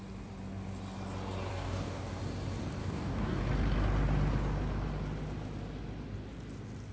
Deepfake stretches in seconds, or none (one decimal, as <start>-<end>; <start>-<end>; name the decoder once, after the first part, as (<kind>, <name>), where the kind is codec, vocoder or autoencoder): 1.5-2.2 (codec, DAC); 2.8-3.4